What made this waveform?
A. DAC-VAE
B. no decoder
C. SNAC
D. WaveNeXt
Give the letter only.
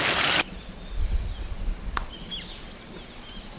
B